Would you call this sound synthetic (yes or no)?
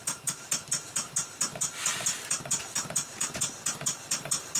no